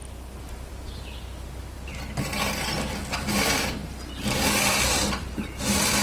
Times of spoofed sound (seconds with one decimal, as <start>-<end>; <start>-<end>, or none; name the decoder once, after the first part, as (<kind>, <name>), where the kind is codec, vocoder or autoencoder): none